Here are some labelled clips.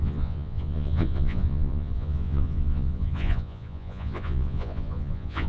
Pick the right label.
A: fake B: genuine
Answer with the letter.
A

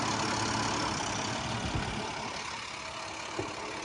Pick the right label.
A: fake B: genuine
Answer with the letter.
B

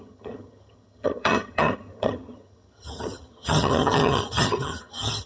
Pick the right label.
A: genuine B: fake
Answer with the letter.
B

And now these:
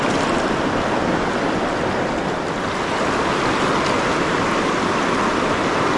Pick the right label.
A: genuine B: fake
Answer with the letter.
A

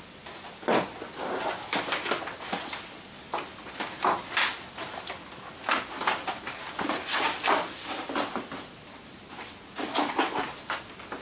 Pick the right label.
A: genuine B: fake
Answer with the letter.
A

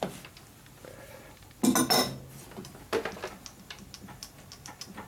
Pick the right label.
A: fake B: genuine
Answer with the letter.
B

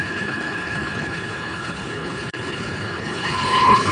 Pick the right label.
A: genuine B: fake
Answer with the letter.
B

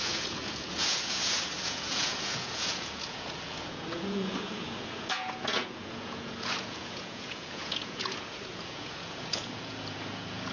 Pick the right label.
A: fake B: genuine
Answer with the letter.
A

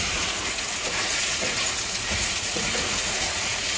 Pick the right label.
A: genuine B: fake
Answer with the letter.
B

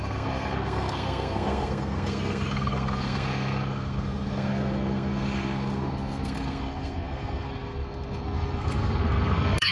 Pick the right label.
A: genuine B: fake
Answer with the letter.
B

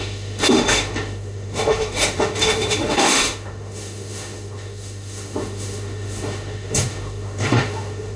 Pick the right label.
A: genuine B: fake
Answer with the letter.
B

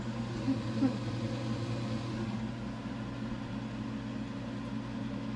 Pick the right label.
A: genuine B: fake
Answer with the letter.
A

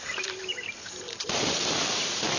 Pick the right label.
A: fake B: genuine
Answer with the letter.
A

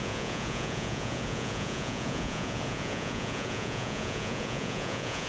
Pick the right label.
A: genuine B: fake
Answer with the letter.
B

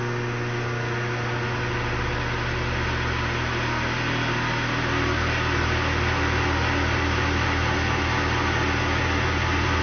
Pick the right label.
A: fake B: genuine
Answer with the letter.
B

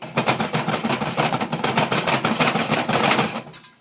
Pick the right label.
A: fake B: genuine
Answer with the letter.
B